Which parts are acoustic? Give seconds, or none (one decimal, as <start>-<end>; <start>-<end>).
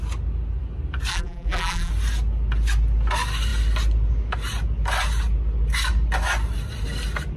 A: 0.0-1.1; 1.9-7.4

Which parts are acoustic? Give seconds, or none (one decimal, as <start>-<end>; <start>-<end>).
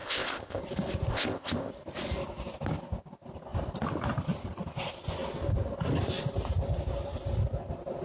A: 0.6-1.1; 1.7-8.0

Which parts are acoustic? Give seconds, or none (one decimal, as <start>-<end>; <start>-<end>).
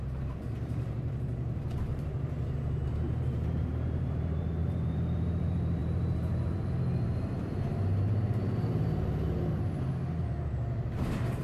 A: none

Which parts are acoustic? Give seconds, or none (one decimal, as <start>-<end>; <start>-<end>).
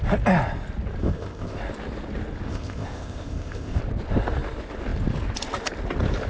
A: 0.0-1.0; 1.6-2.5; 3.8-6.3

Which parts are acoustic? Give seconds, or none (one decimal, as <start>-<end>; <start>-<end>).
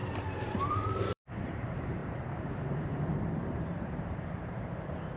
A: none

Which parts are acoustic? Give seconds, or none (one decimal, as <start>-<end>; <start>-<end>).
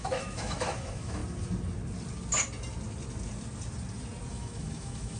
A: 1.2-4.3